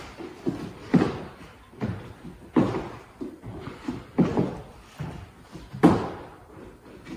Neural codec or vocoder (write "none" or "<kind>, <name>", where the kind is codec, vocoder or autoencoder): vocoder, BigVGAN v2